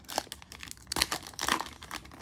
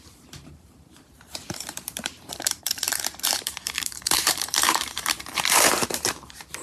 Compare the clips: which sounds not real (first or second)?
second